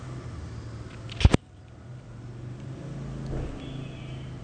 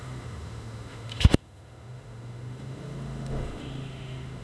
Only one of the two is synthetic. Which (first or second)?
second